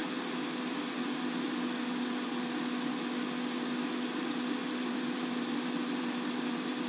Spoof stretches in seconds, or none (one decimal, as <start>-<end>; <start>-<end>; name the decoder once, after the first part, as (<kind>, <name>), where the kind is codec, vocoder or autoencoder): 4.6-6.9 (vocoder, BigVGAN v2)